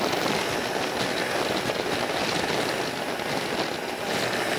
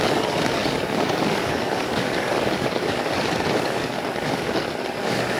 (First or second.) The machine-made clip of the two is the second